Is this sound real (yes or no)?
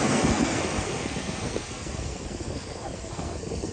no